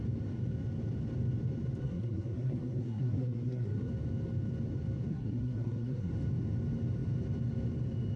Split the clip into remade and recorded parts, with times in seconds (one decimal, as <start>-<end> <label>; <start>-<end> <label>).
0.0-1.8 recorded; 1.8-3.9 remade; 3.9-5.1 recorded; 5.1-6.1 remade; 6.1-8.2 recorded